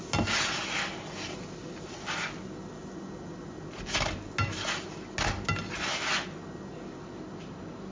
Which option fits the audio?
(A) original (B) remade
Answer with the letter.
A